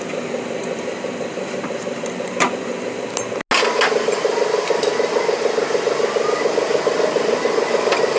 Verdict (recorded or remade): recorded